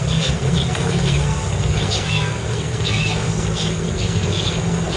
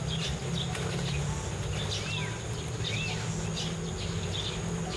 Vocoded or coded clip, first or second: first